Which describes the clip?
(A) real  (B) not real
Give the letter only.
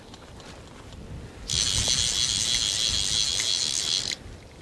A